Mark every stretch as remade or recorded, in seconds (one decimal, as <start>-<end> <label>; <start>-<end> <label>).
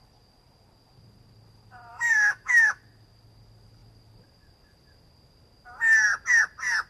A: 0.0-1.9 recorded; 1.9-2.8 remade; 2.8-6.9 recorded